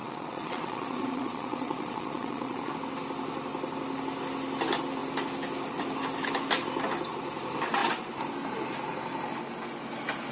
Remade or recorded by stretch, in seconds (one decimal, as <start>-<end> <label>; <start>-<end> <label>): 0.0-2.7 remade; 2.7-10.3 recorded